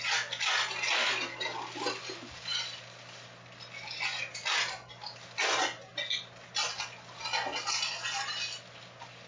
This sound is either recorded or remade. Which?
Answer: recorded